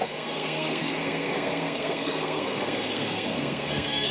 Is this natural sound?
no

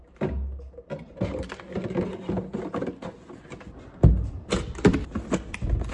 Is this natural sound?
yes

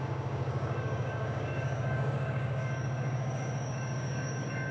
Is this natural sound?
no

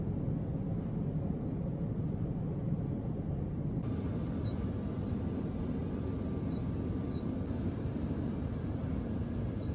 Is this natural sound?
yes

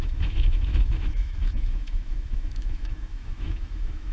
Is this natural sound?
no